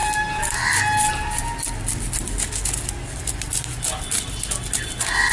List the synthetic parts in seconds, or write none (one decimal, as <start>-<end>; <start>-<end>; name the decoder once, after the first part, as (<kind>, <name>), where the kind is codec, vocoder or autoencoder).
none